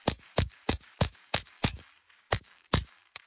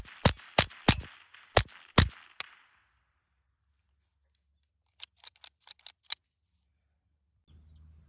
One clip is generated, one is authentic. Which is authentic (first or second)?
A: second